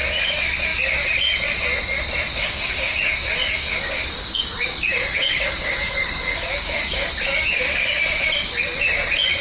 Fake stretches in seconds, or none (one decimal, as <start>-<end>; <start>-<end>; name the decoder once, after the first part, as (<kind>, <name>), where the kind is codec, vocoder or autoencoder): 2.3-7.1 (codec, DAC); 7.5-8.0